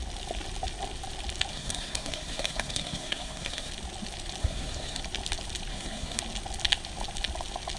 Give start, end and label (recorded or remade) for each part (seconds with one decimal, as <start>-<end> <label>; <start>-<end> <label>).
0.0-1.5 recorded; 1.5-3.7 remade; 3.7-4.4 recorded; 4.4-5.0 remade; 5.0-5.7 recorded; 5.7-6.2 remade; 6.2-7.8 recorded